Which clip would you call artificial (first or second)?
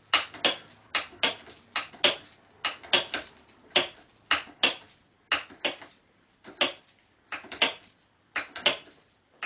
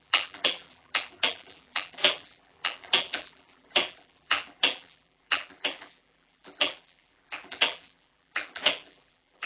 second